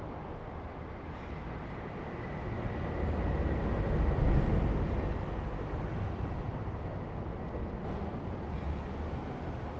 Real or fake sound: real